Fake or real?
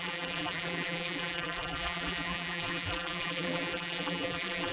fake